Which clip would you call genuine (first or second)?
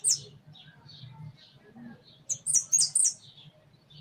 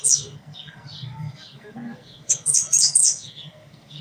first